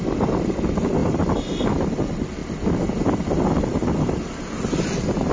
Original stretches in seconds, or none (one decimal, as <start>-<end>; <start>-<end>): 0.0-5.3

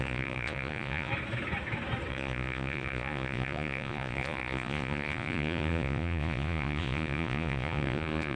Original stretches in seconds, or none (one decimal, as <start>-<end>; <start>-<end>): 1.1-2.1

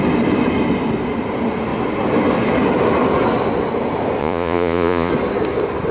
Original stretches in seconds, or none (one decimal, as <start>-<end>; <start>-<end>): 0.0-4.2; 5.1-5.9

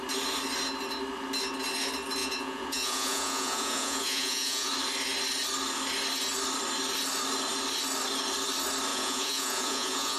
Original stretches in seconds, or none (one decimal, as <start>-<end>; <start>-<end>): 0.0-2.2; 4.7-8.9